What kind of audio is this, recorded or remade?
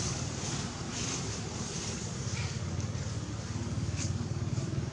remade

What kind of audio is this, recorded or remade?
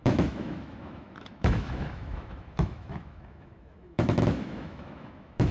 remade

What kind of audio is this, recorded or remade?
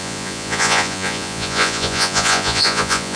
remade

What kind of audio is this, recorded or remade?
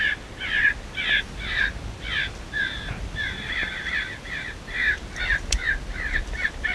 recorded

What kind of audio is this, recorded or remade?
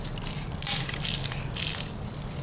recorded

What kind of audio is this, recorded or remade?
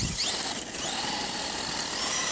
recorded